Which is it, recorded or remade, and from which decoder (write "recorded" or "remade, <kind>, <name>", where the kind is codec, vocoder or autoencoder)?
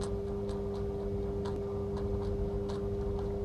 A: recorded